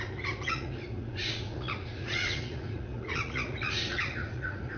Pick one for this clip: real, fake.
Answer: fake